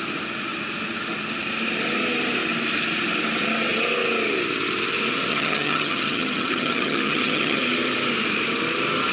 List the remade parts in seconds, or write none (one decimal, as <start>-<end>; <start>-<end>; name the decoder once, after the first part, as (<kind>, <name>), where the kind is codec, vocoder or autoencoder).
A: 5.3-7.6 (vocoder, HiFi-GAN)